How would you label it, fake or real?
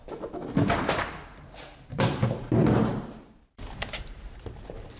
fake